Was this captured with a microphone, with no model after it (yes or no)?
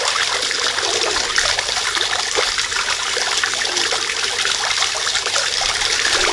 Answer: yes